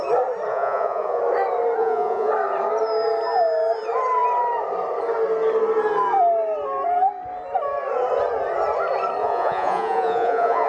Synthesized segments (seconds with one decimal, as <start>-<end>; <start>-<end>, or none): 0.5-1.2; 1.8-2.3; 9.2-10.7